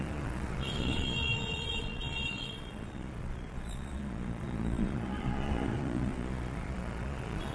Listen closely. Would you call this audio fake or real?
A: fake